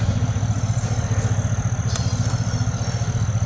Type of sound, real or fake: real